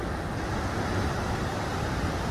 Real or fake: real